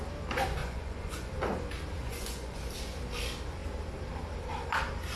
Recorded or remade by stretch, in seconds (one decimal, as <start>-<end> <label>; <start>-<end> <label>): 0.0-0.6 recorded; 0.6-1.3 remade; 1.3-2.0 recorded; 2.0-2.6 remade; 2.6-5.2 recorded